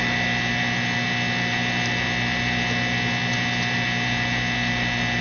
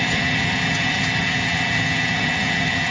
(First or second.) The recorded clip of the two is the first